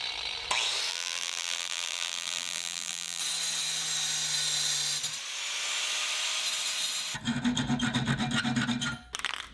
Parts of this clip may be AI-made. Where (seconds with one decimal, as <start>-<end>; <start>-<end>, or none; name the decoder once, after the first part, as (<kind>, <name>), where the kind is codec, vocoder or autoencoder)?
0.9-3.2 (vocoder, BigVGAN v2)